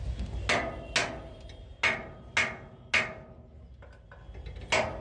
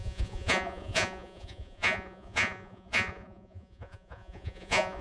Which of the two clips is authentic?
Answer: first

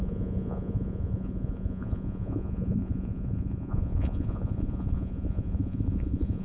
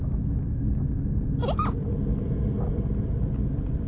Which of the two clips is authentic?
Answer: second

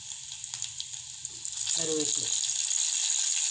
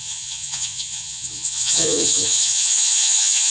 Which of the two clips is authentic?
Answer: first